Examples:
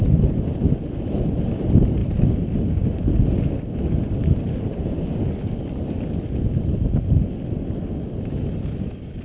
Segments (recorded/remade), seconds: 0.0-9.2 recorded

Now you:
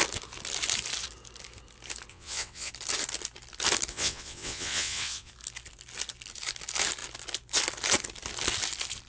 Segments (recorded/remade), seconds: 0.0-2.1 recorded; 2.1-2.7 remade; 2.7-3.9 recorded; 3.9-5.3 remade; 5.3-9.1 recorded

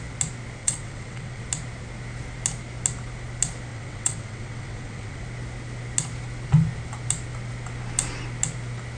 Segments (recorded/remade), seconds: 0.0-0.6 recorded; 0.6-1.4 remade; 1.4-3.7 recorded; 3.7-5.2 remade; 5.2-9.0 recorded

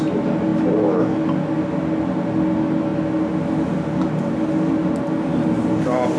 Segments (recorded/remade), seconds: 0.0-6.2 recorded

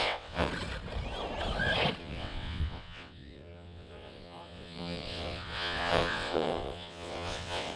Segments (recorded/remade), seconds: 0.0-0.5 remade; 0.5-2.0 recorded; 2.0-7.8 remade

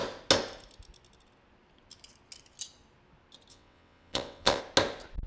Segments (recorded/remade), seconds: 0.0-3.5 recorded; 3.5-4.6 remade; 4.6-5.3 recorded

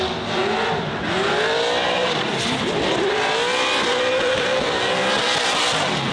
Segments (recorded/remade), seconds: 0.0-6.1 recorded

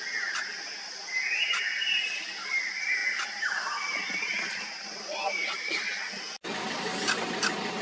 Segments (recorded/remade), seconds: 0.0-7.8 recorded